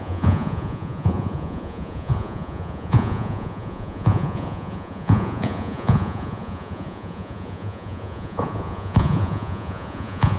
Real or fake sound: fake